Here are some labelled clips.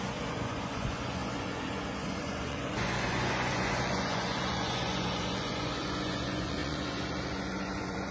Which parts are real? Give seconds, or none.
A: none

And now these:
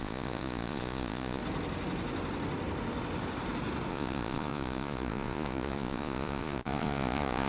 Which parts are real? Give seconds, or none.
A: 1.4-3.9